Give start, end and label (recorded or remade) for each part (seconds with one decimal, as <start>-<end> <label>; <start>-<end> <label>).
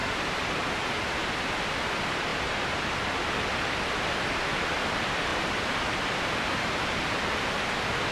0.0-0.7 remade; 0.7-2.3 recorded; 2.3-3.3 remade; 3.3-5.3 recorded; 5.3-6.3 remade; 6.3-8.1 recorded